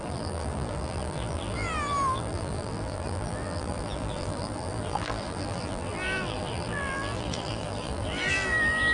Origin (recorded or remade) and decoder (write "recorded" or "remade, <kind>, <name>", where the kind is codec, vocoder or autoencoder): remade, vocoder, BigVGAN v2